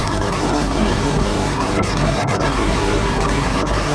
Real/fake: fake